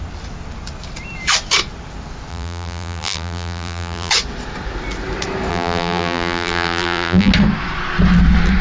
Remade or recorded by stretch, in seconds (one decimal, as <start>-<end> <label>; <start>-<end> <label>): 0.0-2.3 recorded; 2.3-4.1 remade; 4.1-5.5 recorded; 5.5-7.3 remade; 7.3-8.6 recorded